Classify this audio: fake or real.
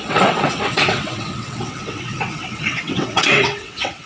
fake